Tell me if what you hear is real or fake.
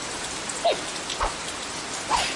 real